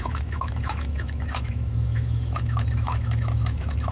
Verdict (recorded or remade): remade